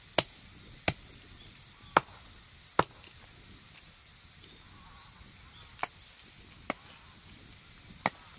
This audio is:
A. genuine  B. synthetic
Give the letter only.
A